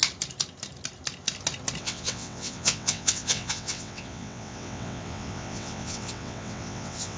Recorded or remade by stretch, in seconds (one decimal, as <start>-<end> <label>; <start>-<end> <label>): 0.0-1.8 recorded; 1.8-7.2 remade